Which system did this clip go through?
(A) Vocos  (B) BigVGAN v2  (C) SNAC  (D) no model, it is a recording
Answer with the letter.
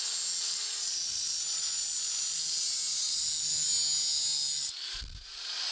D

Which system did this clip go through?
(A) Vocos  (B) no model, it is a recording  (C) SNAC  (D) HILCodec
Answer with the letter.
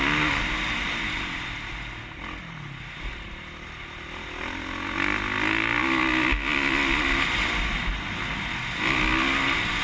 B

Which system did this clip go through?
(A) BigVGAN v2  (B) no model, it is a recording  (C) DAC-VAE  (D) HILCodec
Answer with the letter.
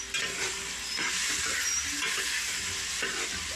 B